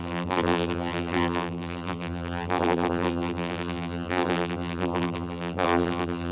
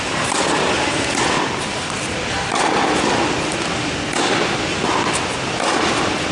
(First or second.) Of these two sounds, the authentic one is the second